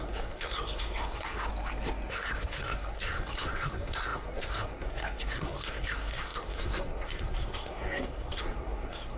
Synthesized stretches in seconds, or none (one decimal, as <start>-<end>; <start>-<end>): 0.0-1.5; 2.1-9.2